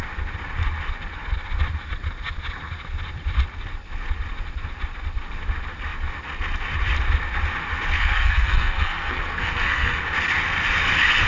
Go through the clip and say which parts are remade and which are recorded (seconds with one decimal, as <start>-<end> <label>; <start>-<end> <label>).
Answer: 0.0-8.0 recorded; 8.0-10.0 remade; 10.0-11.3 recorded